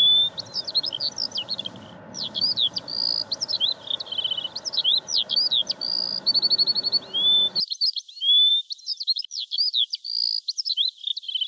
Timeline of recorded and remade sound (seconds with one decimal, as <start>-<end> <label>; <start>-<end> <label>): 0.0-11.5 recorded